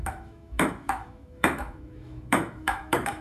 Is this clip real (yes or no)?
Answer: no